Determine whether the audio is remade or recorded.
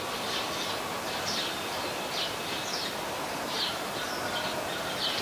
recorded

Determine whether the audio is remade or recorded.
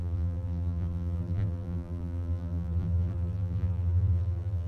remade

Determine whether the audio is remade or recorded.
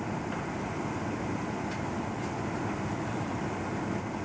remade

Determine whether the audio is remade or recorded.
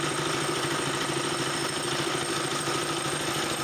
recorded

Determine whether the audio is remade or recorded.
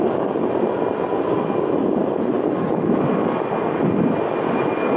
recorded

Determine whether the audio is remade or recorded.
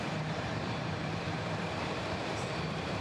remade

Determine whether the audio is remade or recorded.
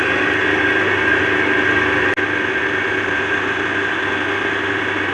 recorded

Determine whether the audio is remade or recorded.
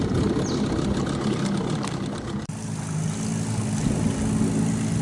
recorded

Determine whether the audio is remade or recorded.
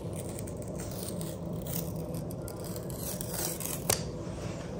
remade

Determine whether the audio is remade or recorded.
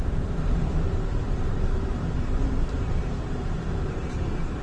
remade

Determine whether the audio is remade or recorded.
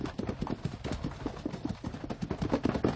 recorded